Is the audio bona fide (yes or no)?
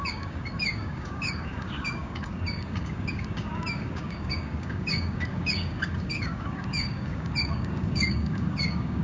no